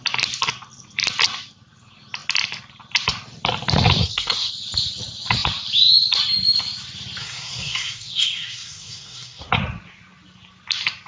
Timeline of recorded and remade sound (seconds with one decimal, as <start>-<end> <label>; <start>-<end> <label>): 0.0-4.0 recorded; 4.0-4.5 remade; 4.5-7.2 recorded; 7.2-9.5 remade; 9.5-11.1 recorded